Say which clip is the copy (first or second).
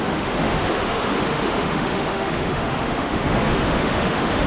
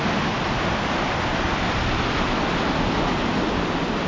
first